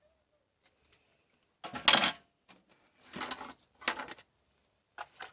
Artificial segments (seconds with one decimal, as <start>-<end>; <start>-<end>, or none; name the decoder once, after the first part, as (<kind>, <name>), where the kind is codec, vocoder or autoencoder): none

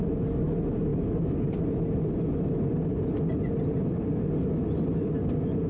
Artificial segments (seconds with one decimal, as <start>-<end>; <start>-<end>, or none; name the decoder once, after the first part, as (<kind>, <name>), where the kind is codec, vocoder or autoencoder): none

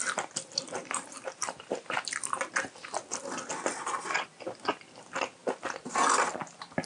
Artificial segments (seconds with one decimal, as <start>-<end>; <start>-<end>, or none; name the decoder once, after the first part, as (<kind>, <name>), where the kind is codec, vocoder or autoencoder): none

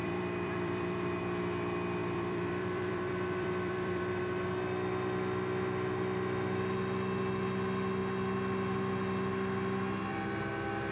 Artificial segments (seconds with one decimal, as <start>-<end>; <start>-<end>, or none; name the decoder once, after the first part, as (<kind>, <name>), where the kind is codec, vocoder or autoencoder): 0.0-1.2 (vocoder, BigVGAN v2); 2.0-4.2

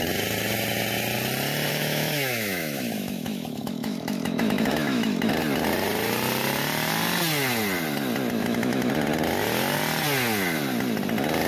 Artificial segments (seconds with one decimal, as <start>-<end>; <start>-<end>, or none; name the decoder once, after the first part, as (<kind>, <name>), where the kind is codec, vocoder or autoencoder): 1.7-5.3 (autoencoder, DAC-VAE); 8.4-8.9

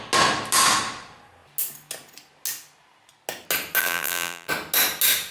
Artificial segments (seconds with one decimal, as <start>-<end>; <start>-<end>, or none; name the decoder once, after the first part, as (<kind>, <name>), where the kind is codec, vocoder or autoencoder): 3.8-4.5 (vocoder, BigVGAN v2)

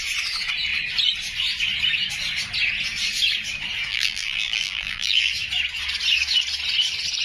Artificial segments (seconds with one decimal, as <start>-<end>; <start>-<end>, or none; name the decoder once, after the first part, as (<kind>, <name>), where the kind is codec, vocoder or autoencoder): 3.9-5.3 (vocoder, BigVGAN v2)

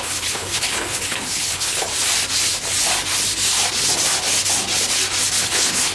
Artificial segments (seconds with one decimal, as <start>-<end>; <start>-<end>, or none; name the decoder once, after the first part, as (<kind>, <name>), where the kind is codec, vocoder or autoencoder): 0.0-1.9 (codec, HILCodec); 5.4-5.9